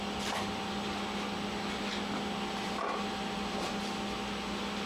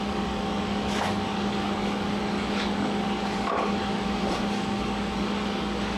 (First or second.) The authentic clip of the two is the first